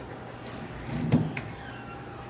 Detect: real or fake real